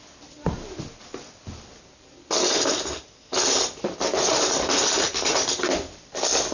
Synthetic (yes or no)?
no